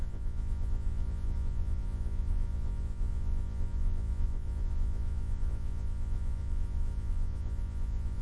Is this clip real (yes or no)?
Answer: no